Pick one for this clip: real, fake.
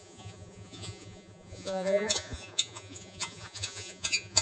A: fake